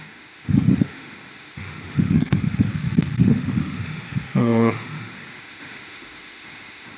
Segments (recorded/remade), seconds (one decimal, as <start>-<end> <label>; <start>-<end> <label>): 0.0-2.7 remade; 2.7-3.2 recorded; 3.2-7.0 remade